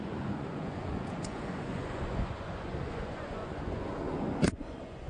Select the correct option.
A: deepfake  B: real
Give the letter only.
A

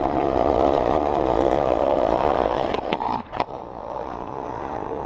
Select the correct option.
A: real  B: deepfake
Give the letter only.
B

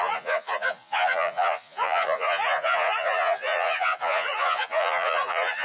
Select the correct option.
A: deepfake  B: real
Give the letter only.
A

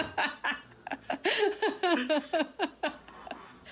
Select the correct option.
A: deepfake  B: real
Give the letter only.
B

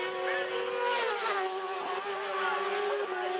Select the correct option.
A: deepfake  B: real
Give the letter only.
B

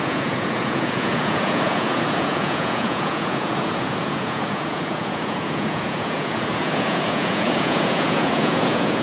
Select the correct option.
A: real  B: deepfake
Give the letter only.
B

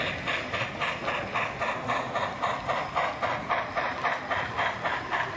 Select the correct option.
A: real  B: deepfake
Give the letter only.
A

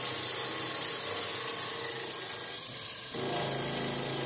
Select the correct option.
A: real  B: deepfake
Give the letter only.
A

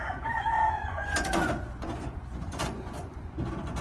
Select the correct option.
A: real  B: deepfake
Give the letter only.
B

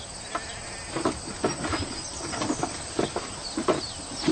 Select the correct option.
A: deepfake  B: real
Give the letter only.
B